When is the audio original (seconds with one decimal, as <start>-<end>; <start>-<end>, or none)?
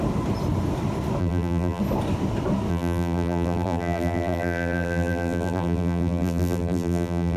0.0-1.2; 1.8-2.7